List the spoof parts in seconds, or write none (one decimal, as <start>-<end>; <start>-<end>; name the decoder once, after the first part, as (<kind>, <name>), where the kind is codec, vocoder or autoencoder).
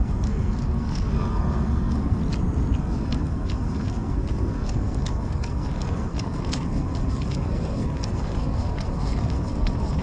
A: 0.0-2.2 (codec, SNAC); 2.8-10.0